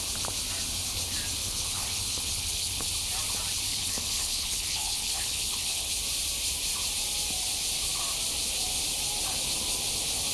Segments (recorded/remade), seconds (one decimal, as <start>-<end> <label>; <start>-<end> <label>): 0.0-1.4 recorded; 1.4-2.9 remade; 2.9-3.7 recorded; 3.7-5.9 remade; 5.9-10.3 recorded